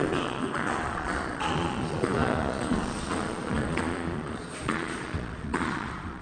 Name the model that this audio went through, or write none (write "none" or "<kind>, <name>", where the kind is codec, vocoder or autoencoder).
vocoder, Vocos